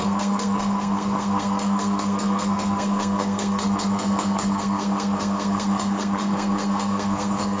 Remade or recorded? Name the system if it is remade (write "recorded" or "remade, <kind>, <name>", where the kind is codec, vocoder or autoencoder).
remade, codec, SNAC